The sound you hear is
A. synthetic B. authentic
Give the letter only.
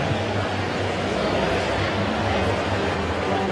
B